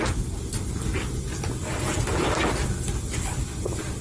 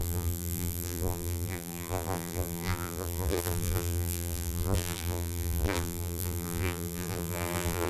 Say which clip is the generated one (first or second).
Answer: second